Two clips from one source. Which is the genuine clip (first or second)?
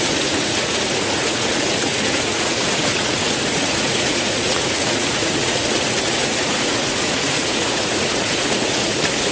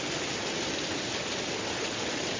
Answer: second